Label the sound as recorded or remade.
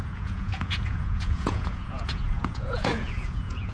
remade